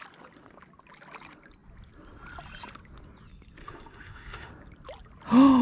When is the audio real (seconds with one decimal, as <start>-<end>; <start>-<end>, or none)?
0.0-3.6; 4.5-5.6